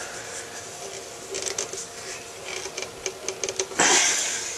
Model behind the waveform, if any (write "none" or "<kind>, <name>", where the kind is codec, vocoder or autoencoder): none